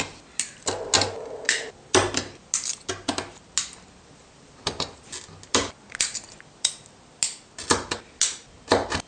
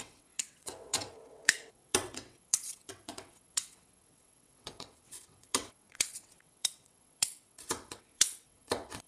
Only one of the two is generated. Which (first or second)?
second